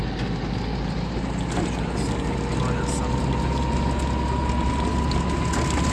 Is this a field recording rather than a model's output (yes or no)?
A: yes